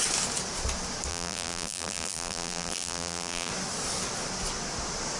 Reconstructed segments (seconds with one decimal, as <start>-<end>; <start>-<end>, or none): 1.1-3.5